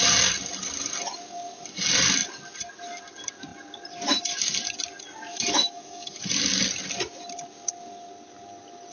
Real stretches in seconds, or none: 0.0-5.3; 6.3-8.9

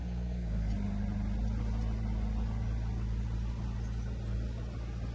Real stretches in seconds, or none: 0.7-5.1

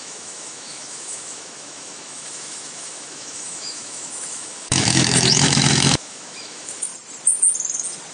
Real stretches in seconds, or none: 6.9-8.1

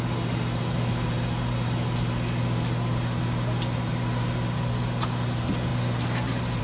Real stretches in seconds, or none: 0.0-6.6

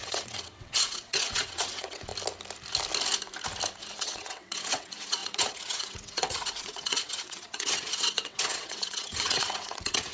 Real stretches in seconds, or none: 2.1-3.8

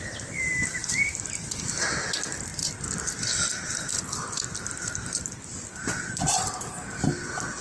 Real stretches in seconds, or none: 0.0-7.6